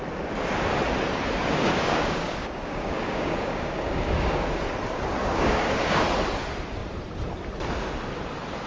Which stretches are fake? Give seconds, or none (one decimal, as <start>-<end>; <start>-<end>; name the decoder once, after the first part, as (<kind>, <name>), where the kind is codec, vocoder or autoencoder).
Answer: 1.4-4.6 (codec, DAC); 5.2-6.0